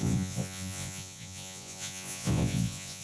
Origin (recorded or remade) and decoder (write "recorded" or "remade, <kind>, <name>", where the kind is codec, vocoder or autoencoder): remade, vocoder, Vocos